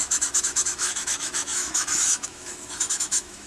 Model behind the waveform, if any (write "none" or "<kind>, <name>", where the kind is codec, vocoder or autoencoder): autoencoder, DAC-VAE